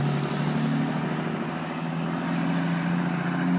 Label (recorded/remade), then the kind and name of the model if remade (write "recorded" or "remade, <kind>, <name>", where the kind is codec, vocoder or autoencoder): recorded